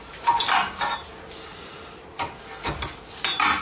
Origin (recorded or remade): recorded